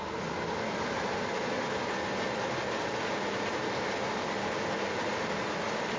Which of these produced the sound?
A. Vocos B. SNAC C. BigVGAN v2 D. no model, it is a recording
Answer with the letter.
D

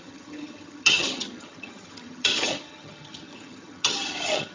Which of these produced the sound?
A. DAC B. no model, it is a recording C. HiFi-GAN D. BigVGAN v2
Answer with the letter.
C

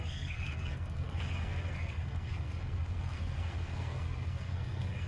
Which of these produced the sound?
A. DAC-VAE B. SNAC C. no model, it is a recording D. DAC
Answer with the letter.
B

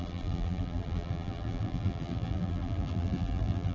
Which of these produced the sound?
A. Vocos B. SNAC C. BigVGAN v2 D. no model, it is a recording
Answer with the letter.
C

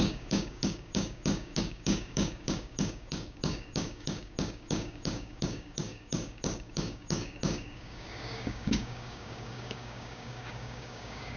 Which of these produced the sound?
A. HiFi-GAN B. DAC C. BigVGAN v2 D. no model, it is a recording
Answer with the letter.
B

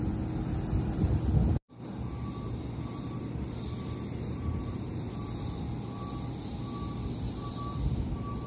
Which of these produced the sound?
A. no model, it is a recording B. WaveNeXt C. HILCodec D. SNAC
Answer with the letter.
A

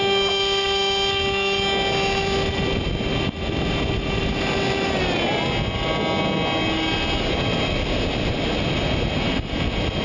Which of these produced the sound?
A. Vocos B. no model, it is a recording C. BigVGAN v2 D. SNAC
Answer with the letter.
B